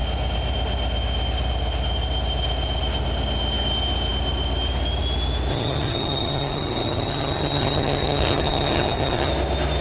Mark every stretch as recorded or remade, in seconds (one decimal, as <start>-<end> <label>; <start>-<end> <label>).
0.0-5.5 recorded; 5.5-9.3 remade; 9.3-9.8 recorded